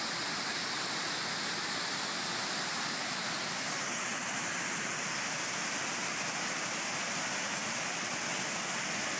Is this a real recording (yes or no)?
yes